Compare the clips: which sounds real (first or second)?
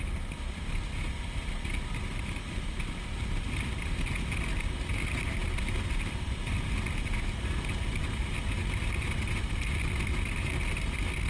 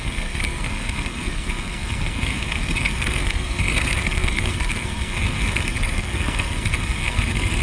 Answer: first